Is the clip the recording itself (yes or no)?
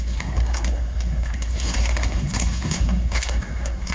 no